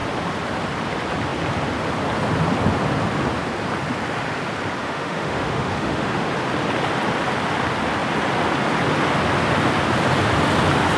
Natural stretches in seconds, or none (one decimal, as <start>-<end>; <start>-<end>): 0.0-4.8; 6.3-11.0